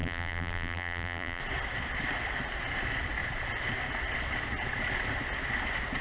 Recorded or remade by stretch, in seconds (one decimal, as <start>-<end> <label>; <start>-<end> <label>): 0.0-1.4 remade; 1.4-6.0 recorded